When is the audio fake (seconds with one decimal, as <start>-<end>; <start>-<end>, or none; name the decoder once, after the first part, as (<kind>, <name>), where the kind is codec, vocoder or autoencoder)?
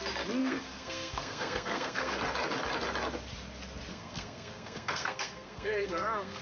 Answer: 0.4-2.2 (codec, SNAC); 3.9-6.4